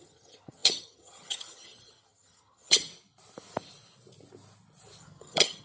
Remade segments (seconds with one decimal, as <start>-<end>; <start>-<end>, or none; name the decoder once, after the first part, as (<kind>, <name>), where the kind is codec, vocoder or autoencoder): 0.0-2.9 (vocoder, HiFi-GAN); 5.0-5.6